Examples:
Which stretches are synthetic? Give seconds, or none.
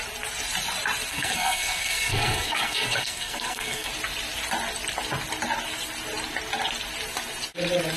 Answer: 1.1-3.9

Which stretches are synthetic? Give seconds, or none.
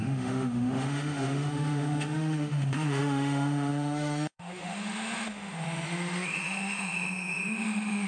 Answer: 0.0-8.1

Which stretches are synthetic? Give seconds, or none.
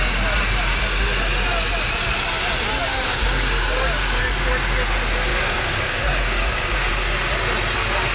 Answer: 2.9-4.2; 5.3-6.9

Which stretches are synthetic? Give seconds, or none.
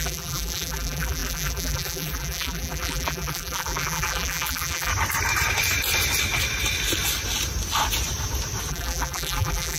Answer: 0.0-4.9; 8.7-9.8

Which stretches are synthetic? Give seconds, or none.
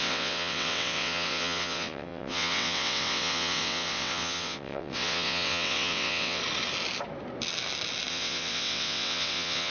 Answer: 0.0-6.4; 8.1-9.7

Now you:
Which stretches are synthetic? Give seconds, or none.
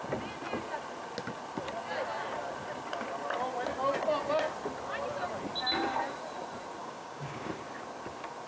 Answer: 6.8-7.5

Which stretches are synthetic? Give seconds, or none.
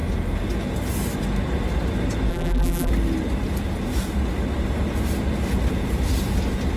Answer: 2.3-2.9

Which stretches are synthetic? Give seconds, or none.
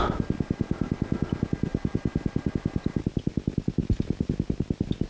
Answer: none